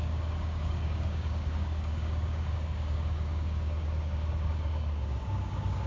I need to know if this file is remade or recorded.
remade